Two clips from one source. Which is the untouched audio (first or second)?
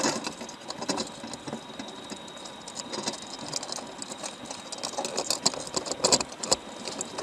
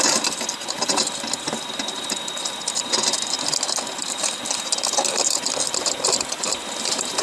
first